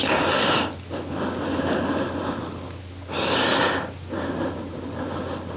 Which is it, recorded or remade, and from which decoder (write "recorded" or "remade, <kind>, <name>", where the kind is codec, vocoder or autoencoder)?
recorded